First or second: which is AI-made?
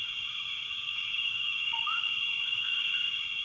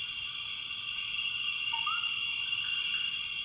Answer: first